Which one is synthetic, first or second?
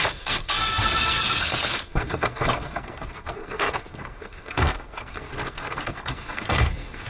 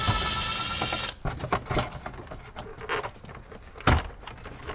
first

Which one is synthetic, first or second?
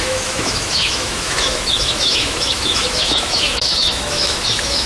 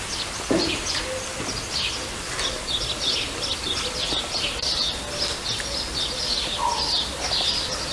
first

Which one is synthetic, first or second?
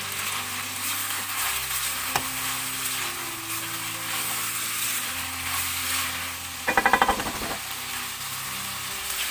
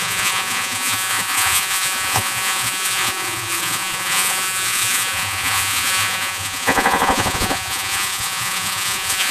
second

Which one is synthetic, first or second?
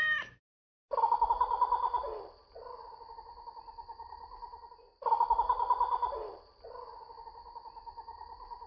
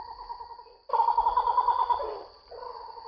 second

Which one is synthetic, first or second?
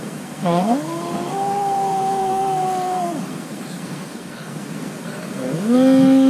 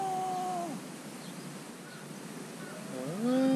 first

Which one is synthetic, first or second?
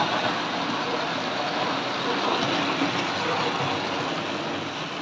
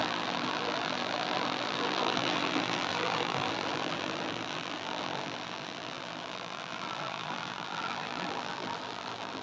second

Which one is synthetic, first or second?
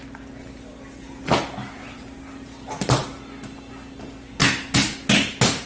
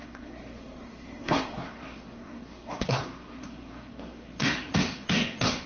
second